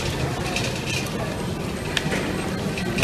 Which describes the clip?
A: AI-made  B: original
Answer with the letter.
B